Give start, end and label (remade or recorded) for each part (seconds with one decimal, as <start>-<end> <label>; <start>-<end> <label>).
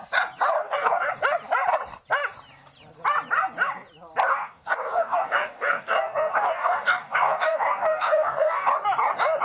0.0-0.6 recorded; 0.6-1.1 remade; 1.1-4.3 recorded; 4.3-8.7 remade; 8.7-9.4 recorded